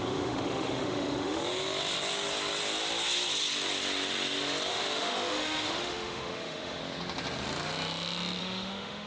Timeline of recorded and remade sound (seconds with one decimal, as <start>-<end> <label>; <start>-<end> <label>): 0.0-1.4 remade; 1.4-4.7 recorded; 4.7-6.8 remade; 6.8-8.4 recorded; 8.4-9.1 remade